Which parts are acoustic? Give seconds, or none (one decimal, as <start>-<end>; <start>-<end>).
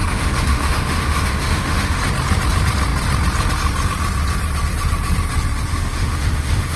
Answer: 2.0-5.7